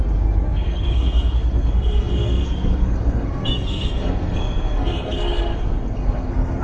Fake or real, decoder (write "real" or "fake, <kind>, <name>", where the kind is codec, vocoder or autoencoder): fake, codec, SNAC